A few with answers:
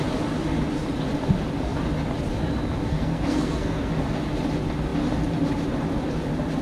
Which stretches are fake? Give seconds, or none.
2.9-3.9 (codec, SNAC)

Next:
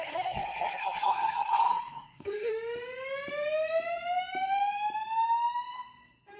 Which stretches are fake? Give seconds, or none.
0.0-2.5 (codec, SNAC)

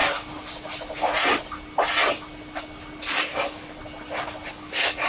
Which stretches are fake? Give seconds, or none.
3.1-3.8 (codec, DAC); 4.5-5.1

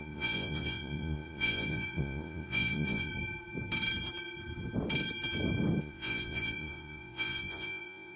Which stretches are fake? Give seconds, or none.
0.0-3.1 (vocoder, Vocos); 5.8-8.2

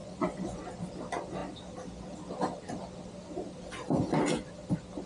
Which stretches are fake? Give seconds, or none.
0.0-0.6 (vocoder, Vocos)